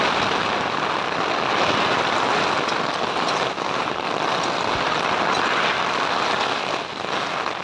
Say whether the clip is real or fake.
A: real